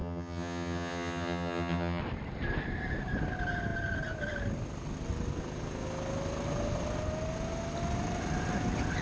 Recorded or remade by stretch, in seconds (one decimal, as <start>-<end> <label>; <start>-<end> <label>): 0.0-2.0 remade; 2.0-9.0 recorded